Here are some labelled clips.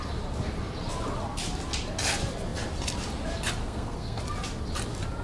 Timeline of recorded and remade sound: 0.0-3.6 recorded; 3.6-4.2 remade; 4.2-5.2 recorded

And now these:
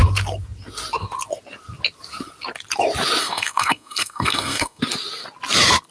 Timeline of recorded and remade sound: 0.0-3.2 recorded; 3.2-4.8 remade; 4.8-5.9 recorded